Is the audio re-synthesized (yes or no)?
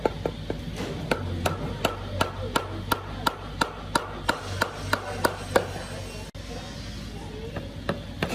no